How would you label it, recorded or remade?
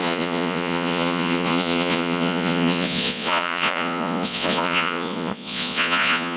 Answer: remade